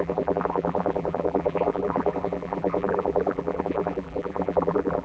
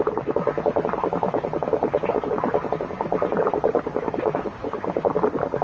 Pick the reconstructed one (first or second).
first